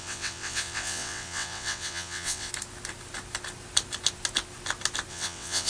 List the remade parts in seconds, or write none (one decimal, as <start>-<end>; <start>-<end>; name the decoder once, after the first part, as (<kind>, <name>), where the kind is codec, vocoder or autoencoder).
0.0-2.5 (vocoder, WaveNeXt); 5.1-5.7